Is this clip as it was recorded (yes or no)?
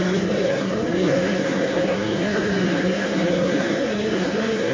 no